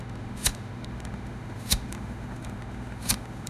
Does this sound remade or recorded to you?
remade